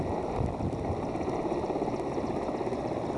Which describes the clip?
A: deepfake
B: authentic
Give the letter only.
B